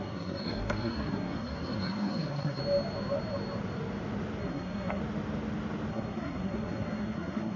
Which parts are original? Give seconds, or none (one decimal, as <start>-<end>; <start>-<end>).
2.6-4.4; 5.0-5.9